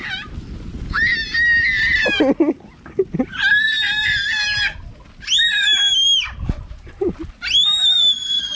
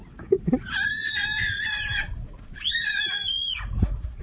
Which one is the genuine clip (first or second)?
first